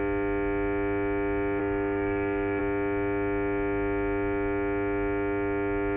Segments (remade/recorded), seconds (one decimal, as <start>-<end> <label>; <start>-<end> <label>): 0.0-1.6 recorded; 1.6-2.6 remade; 2.6-6.0 recorded